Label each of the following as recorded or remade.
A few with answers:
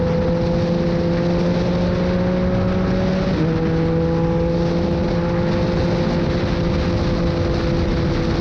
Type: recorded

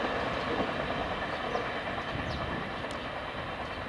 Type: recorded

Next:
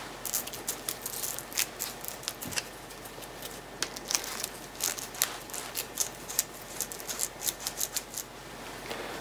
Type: recorded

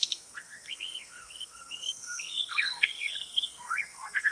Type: remade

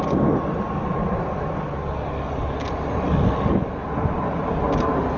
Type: recorded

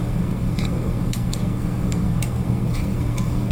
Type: remade